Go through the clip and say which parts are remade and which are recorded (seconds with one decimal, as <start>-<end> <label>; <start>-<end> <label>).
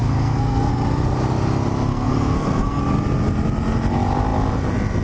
0.0-0.7 remade; 0.7-1.9 recorded; 1.9-2.8 remade; 2.8-5.0 recorded